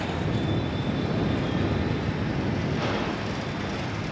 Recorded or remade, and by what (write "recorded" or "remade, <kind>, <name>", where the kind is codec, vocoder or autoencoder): recorded